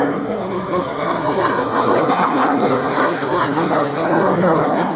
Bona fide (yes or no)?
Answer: no